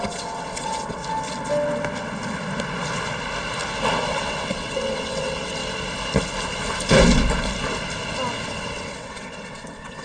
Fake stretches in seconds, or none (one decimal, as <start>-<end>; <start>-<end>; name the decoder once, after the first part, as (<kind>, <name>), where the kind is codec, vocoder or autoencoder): 0.0-1.0 (vocoder, WaveNeXt); 4.1-5.6; 8.5-10.0